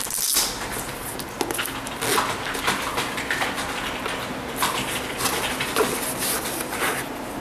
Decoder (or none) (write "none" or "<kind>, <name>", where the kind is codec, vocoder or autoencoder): none